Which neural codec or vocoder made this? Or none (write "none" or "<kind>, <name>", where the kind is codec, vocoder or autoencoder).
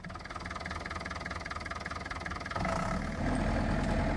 none